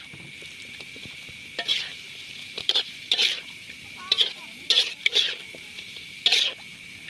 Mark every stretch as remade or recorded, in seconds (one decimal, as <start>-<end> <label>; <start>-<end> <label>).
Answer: 0.0-1.9 recorded; 1.9-6.2 remade; 6.2-7.1 recorded